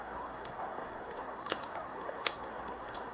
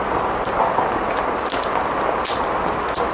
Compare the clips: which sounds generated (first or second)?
first